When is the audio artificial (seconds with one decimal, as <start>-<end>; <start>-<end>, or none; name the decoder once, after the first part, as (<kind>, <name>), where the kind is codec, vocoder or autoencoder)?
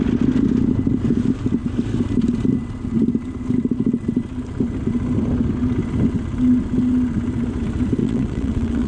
8.0-8.9 (vocoder, WaveNeXt)